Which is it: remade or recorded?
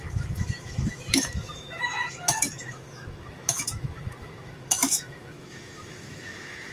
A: remade